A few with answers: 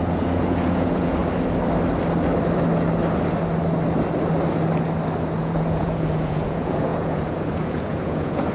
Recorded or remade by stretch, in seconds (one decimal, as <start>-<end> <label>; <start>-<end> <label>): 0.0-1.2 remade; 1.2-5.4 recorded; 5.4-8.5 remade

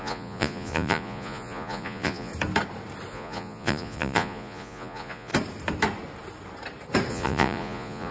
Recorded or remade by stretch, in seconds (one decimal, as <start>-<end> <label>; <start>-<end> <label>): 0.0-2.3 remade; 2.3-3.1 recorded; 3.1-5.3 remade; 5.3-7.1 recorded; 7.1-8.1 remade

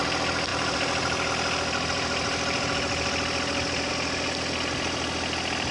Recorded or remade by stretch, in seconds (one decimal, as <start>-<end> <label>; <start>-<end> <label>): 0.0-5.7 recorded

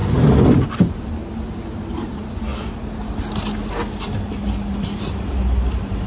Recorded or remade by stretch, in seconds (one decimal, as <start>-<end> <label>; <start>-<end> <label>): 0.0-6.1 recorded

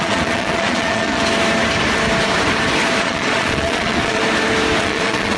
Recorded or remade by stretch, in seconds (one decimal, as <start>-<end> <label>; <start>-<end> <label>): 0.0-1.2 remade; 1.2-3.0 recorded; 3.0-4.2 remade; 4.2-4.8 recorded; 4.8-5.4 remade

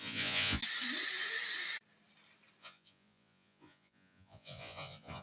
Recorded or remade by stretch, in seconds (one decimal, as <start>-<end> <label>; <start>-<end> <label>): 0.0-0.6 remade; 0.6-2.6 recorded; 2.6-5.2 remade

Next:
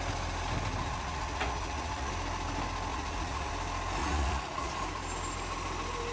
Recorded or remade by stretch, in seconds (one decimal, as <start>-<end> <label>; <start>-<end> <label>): 0.0-0.8 recorded; 0.8-2.1 remade; 2.1-2.9 recorded; 2.9-3.5 remade; 3.5-4.0 recorded; 4.0-4.7 remade; 4.7-6.1 recorded